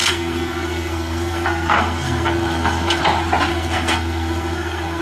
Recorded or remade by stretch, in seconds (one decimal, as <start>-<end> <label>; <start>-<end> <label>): 0.0-3.0 remade; 3.0-3.5 recorded; 3.5-5.0 remade